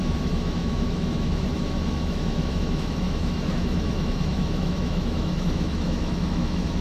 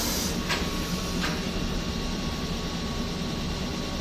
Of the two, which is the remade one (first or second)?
first